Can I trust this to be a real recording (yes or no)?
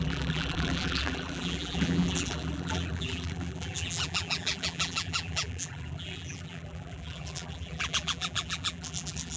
no